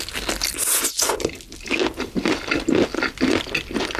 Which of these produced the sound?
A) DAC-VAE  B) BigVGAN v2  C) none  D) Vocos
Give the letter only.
C